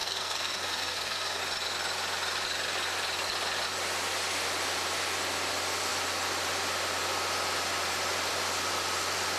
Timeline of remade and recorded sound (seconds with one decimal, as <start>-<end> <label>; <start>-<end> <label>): 0.0-1.4 remade; 1.4-9.4 recorded